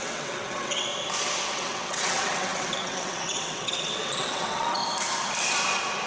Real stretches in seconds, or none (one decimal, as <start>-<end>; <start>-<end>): 0.9-1.5; 4.8-6.1